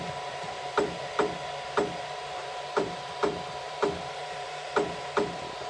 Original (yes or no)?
no